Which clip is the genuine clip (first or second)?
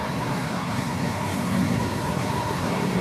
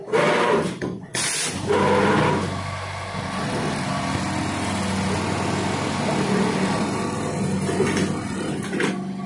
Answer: second